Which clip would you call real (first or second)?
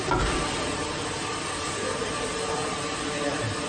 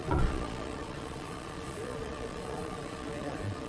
first